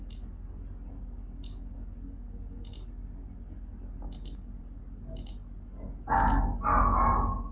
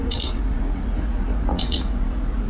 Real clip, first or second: first